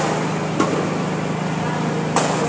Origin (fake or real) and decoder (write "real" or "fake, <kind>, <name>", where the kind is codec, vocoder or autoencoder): real